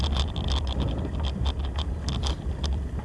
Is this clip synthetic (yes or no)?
no